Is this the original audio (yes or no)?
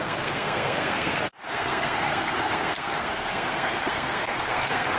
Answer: no